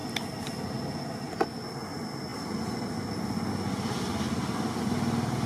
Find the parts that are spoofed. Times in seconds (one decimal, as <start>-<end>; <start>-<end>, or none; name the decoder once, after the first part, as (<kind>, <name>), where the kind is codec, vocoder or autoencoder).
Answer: none